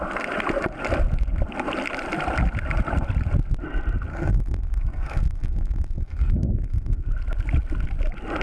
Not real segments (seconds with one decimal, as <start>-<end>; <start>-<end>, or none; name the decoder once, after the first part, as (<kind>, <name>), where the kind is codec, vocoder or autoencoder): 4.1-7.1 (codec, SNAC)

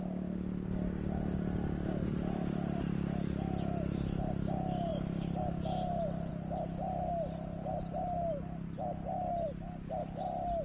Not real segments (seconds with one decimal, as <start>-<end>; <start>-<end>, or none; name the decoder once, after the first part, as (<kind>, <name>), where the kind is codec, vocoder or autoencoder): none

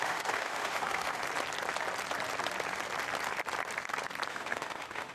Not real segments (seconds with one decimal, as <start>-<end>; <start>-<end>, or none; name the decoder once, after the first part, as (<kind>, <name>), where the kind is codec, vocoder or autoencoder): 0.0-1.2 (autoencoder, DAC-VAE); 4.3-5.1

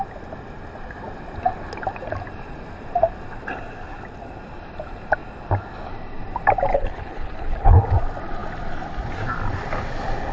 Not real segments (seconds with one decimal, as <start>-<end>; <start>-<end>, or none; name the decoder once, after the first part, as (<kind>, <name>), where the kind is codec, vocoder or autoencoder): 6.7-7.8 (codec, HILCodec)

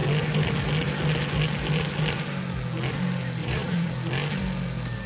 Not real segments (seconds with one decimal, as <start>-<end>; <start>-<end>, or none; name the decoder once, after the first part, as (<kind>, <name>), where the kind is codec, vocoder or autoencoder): 3.4-3.9 (vocoder, Vocos)